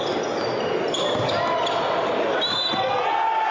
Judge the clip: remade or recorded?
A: recorded